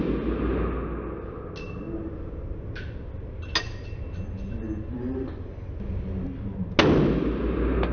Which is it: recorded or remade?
recorded